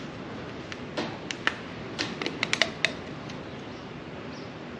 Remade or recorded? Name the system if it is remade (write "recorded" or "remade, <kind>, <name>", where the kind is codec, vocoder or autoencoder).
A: recorded